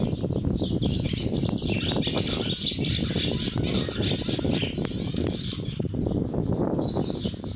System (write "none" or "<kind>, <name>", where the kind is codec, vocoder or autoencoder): none